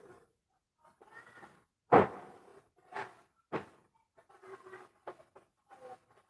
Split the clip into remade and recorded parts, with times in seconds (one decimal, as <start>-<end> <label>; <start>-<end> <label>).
0.0-6.3 recorded